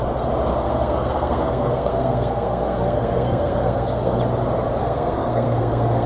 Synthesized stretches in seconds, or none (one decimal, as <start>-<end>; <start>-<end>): 0.5-4.2; 4.8-6.1